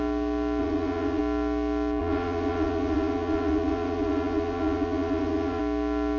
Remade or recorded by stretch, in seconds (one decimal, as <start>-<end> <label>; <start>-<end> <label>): 0.0-0.6 recorded; 0.6-1.2 remade; 1.2-2.0 recorded; 2.0-5.6 remade; 5.6-6.2 recorded